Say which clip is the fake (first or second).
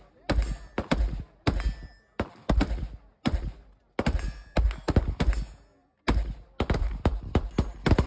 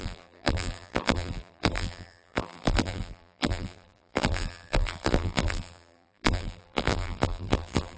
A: second